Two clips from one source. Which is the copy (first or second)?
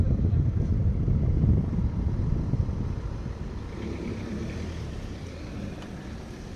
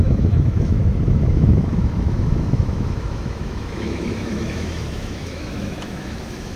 second